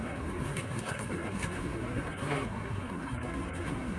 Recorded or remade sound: remade